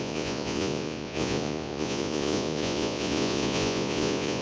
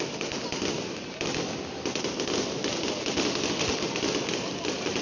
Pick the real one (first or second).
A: second